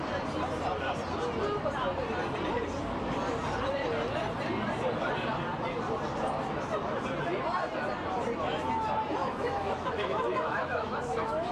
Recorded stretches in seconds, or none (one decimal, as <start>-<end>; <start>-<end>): 0.0-9.2